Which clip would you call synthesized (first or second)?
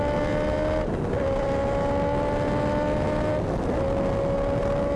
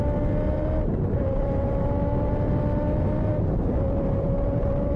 second